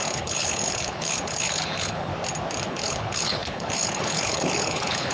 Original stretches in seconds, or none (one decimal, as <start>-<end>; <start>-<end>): 2.1-2.7